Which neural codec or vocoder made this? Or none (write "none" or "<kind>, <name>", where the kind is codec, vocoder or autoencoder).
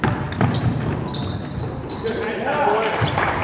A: none